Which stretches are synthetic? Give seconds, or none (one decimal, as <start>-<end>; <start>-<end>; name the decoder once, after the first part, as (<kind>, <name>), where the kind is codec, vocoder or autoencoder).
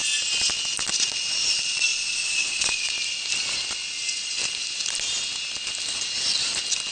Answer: 1.9-2.9 (vocoder, Vocos)